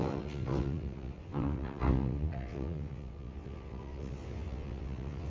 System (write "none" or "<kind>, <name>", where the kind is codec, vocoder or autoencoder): vocoder, WaveNeXt